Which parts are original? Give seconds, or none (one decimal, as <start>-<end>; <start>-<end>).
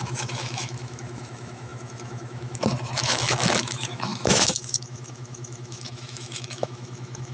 none